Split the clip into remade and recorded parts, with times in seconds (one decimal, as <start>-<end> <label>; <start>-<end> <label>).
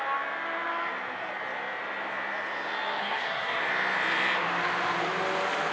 0.0-3.0 recorded; 3.0-3.6 remade; 3.6-5.7 recorded